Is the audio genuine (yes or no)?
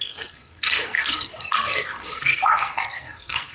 no